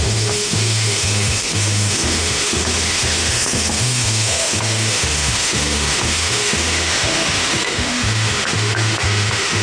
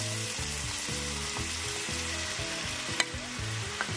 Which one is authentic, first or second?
second